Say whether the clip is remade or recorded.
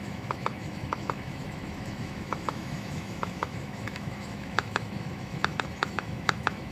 remade